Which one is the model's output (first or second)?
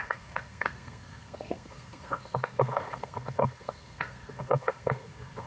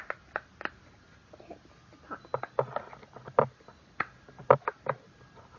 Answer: first